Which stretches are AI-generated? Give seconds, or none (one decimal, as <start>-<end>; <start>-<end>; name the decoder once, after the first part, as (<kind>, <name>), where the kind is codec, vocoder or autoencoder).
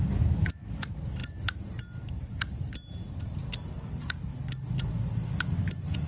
none